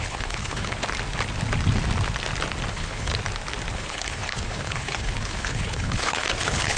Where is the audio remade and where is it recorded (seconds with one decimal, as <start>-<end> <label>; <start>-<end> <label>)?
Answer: 0.0-0.8 remade; 0.8-2.7 recorded; 2.7-3.1 remade; 3.1-3.7 recorded; 3.7-6.8 remade